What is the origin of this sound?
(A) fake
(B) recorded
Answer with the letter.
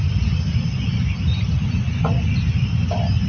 B